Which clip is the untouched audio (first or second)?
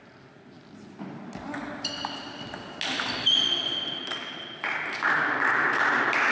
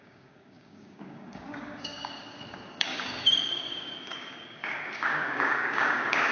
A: first